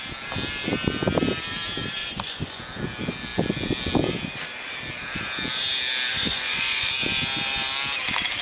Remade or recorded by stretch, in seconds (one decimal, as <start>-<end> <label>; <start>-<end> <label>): 0.0-2.0 recorded; 2.0-2.6 remade; 2.6-6.1 recorded; 6.1-6.9 remade; 6.9-8.4 recorded